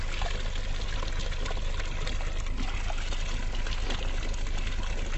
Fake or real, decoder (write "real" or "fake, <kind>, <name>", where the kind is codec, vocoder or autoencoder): real